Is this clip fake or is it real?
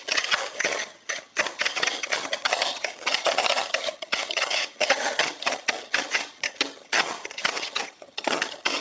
fake